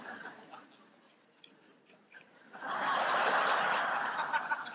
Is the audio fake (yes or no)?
yes